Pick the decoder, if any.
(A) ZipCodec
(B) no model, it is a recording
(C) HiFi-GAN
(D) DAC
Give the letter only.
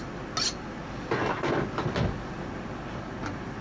B